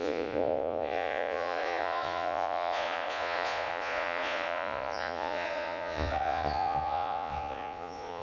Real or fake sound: fake